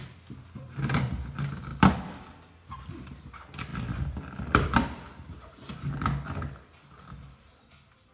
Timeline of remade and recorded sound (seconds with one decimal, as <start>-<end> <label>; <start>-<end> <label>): 0.0-1.7 recorded; 1.7-3.3 remade; 3.3-3.7 recorded; 3.7-5.9 remade; 5.9-8.1 recorded